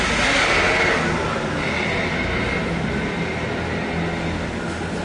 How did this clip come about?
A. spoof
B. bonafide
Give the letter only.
B